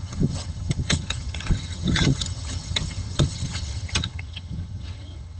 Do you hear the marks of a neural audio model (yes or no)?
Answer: yes